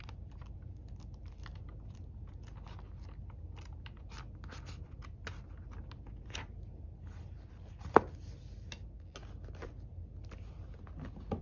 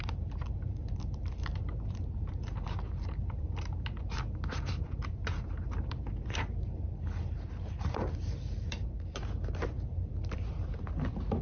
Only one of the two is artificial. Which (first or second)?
second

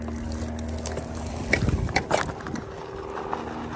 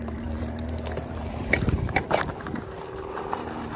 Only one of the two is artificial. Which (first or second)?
second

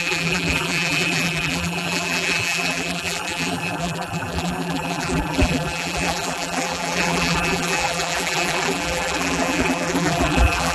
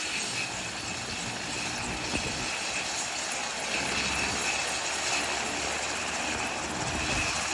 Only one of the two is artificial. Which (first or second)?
first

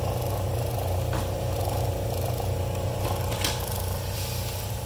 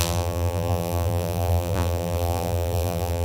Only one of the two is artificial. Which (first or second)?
second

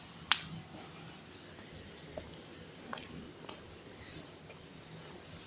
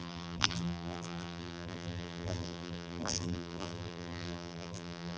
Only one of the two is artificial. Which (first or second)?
second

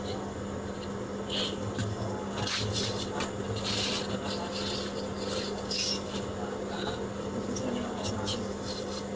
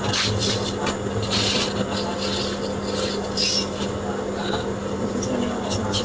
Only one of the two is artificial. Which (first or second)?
first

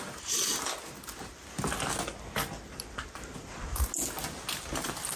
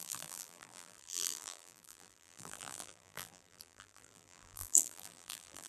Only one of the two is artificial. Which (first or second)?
second